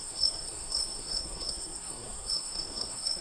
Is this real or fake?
fake